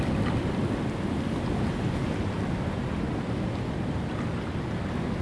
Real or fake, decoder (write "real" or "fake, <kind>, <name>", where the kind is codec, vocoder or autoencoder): real